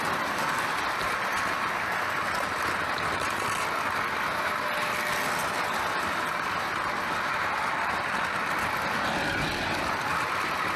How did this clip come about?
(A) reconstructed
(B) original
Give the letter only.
B